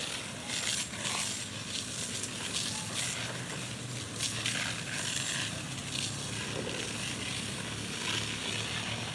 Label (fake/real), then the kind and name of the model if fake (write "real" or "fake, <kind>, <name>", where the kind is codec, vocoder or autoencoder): real